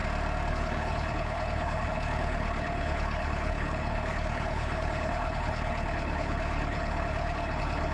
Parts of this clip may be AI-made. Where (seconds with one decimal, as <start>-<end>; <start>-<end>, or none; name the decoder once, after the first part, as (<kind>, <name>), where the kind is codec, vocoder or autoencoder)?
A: 0.5-7.9 (codec, HILCodec)